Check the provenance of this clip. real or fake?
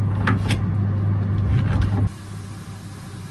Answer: real